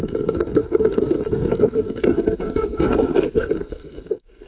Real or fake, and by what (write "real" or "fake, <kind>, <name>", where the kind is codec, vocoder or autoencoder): fake, codec, SNAC